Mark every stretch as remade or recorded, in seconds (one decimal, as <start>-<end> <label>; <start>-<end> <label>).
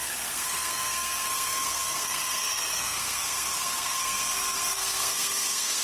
0.0-5.8 remade